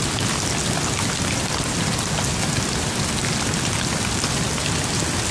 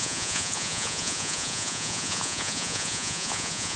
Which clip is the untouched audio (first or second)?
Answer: first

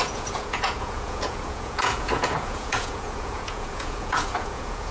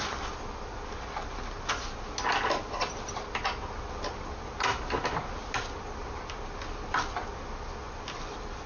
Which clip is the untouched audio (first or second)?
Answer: second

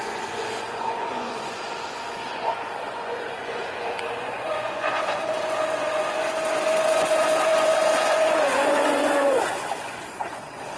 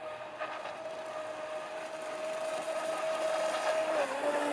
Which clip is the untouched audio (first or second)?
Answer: second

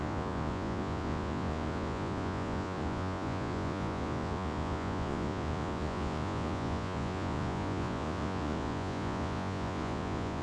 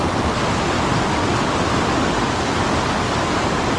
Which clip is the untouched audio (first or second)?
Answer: second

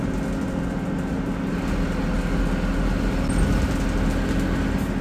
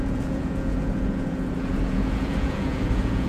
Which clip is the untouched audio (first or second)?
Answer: first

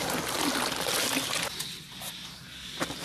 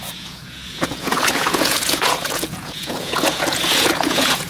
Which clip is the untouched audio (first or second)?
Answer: first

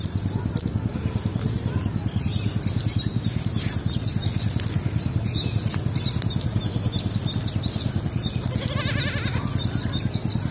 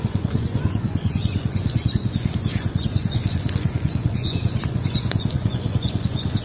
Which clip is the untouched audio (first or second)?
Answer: first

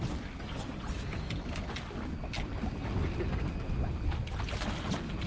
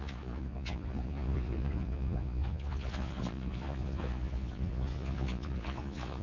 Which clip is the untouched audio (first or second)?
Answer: first